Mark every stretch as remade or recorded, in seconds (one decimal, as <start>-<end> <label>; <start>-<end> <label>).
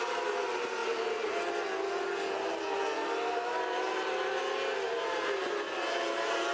0.0-6.5 recorded